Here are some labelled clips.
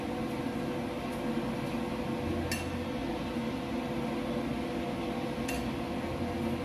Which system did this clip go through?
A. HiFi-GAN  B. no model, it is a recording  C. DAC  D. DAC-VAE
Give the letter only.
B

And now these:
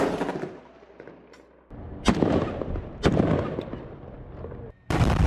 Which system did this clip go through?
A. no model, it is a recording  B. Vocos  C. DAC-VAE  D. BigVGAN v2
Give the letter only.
A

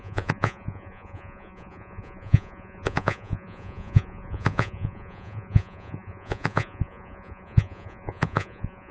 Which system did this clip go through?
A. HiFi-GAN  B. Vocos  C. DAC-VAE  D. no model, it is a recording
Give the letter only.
B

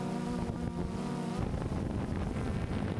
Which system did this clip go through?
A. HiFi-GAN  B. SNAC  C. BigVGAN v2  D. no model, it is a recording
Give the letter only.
D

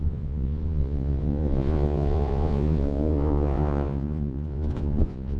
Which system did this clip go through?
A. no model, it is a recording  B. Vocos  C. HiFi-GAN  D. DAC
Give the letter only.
B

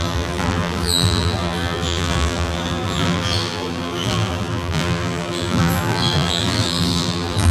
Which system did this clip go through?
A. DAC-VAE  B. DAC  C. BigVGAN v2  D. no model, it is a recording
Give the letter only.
C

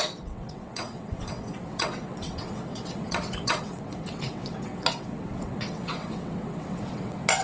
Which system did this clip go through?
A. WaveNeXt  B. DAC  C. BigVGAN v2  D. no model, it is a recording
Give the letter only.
A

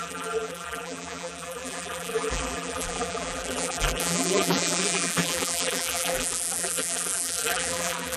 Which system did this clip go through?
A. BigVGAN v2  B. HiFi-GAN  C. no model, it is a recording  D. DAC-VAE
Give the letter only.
A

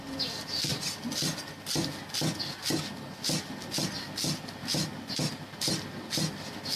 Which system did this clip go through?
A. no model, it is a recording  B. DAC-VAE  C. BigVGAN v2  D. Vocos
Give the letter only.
A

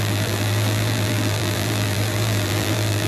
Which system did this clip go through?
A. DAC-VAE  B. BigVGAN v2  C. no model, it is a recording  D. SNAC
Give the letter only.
B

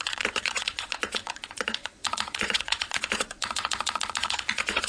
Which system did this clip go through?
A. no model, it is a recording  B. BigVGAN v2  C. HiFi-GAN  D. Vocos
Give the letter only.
D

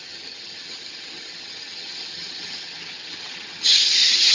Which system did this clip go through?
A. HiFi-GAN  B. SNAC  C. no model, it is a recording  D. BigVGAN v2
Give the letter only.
A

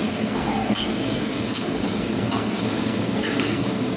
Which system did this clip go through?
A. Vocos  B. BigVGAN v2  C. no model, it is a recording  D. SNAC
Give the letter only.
D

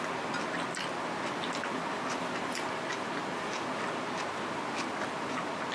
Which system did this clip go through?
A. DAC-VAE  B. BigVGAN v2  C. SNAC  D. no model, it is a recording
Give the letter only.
D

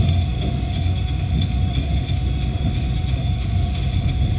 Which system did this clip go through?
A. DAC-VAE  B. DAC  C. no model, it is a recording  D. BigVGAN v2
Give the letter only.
A